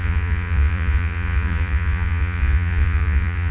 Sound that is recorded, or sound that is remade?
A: remade